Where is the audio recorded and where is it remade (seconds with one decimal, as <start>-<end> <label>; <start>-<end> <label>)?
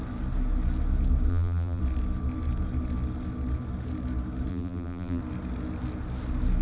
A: 0.0-1.3 recorded; 1.3-1.8 remade; 1.8-4.5 recorded; 4.5-5.2 remade; 5.2-6.6 recorded